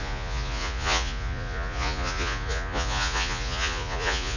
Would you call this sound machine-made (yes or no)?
yes